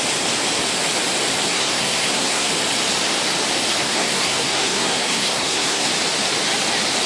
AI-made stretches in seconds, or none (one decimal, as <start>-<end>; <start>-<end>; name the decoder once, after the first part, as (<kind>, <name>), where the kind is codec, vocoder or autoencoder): 1.5-2.5 (codec, SNAC); 3.8-5.9